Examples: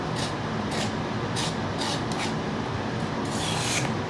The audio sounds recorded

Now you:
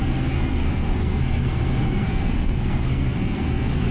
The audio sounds remade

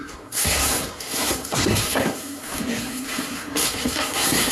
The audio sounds remade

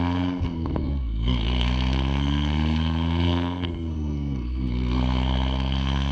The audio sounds remade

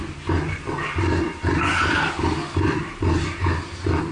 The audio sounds recorded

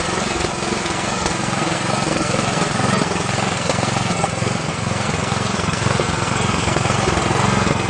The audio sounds remade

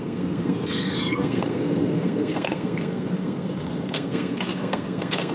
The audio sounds remade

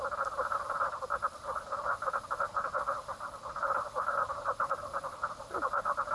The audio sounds recorded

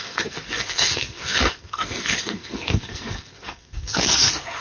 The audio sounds remade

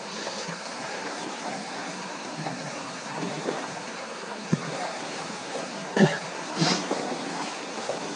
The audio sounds remade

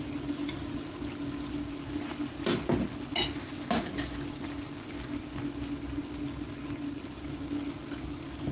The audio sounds recorded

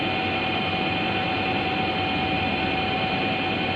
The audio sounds recorded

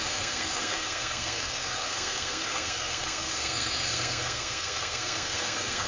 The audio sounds remade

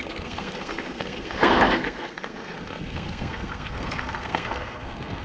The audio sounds remade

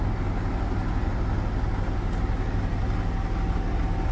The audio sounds recorded